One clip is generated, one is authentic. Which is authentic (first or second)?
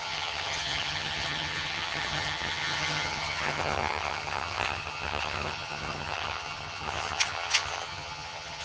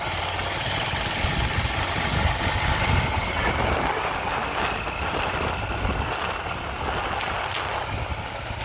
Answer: second